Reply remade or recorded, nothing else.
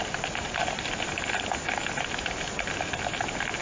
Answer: recorded